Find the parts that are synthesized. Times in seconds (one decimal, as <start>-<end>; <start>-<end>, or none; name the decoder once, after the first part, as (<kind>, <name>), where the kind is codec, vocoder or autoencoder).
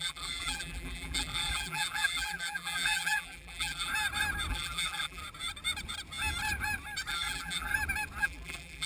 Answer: 0.0-3.9 (vocoder, BigVGAN v2); 4.5-5.2; 7.1-7.7; 8.2-8.9